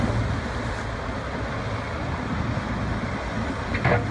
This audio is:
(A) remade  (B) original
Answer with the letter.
B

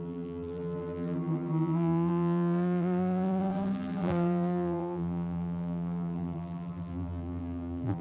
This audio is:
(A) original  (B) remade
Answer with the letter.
B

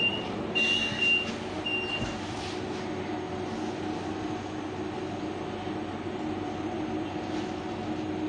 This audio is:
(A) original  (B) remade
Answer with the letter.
A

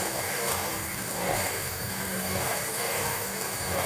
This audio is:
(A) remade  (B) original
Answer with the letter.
A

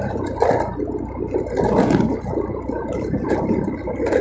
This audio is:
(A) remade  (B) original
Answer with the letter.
B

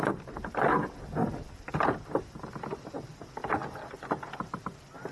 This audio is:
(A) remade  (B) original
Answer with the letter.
B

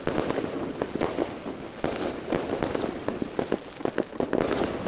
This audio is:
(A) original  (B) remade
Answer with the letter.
A